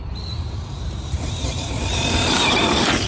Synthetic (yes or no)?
yes